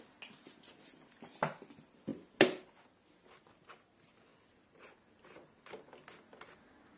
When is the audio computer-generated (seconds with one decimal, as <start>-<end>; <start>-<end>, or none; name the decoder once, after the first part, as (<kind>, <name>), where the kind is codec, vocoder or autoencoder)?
none